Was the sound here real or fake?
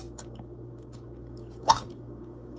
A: fake